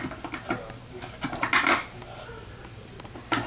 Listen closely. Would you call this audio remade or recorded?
recorded